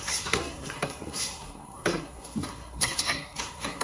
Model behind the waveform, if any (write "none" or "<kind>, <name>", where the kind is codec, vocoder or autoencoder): codec, SNAC